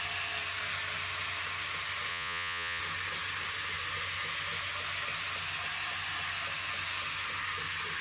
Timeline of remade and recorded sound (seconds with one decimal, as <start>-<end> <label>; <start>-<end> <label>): 0.0-2.1 recorded; 2.1-2.8 remade; 2.8-8.0 recorded